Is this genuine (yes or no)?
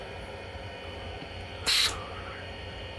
yes